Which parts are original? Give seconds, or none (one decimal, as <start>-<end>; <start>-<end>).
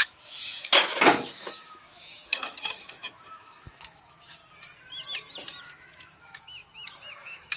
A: 4.4-5.6